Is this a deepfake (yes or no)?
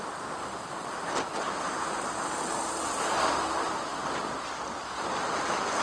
no